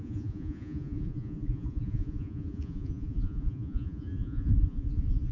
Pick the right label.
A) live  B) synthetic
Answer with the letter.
B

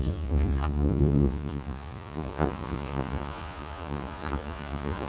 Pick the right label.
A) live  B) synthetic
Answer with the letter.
B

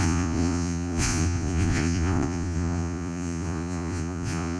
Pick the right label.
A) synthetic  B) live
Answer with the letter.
A